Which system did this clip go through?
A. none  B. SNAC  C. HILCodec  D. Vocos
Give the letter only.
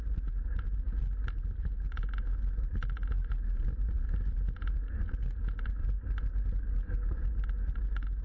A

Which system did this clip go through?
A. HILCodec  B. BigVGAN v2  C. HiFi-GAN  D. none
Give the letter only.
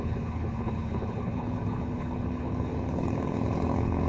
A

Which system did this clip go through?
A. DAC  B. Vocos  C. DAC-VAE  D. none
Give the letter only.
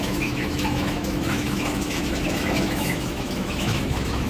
C